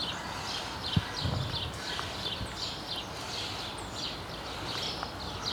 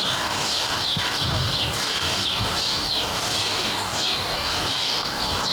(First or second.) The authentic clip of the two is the first